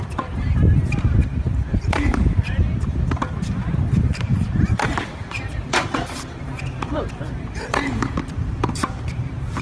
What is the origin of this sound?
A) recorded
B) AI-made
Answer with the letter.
B